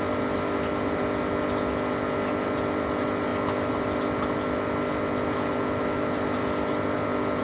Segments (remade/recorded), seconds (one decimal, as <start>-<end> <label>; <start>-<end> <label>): 0.0-7.4 recorded